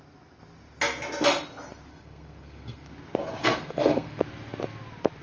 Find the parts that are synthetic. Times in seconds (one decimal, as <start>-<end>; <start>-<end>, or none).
1.9-2.9; 3.4-4.2